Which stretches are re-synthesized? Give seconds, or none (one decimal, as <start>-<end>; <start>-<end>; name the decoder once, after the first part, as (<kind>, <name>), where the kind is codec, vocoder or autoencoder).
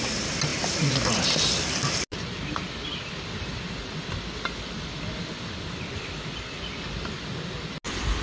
none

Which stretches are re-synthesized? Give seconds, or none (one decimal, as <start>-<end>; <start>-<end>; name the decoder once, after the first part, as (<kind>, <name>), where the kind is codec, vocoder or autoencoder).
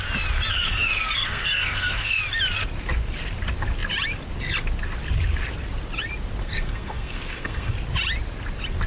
0.5-2.2 (codec, SNAC); 6.4-7.7